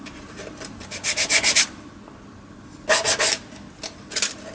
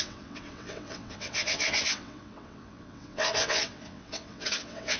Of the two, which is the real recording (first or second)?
first